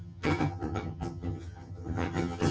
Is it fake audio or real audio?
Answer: fake